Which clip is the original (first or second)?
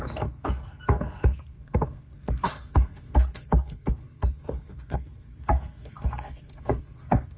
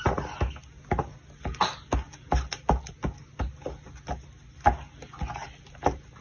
second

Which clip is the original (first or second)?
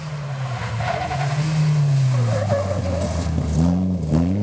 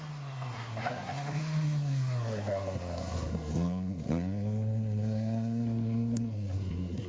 first